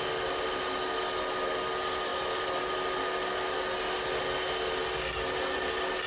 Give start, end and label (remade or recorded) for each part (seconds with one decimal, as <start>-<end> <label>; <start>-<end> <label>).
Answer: 0.0-6.1 recorded